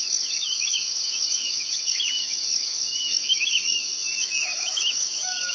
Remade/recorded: remade